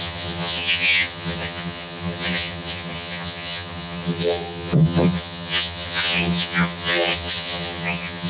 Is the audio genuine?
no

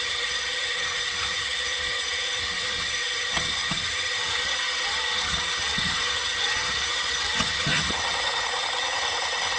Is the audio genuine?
no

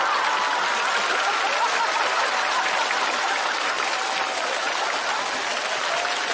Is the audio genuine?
yes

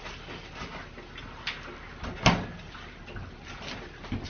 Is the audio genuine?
yes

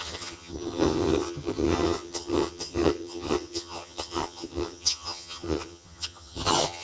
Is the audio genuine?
no